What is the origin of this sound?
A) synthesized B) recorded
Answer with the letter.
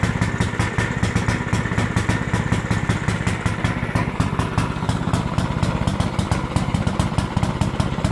B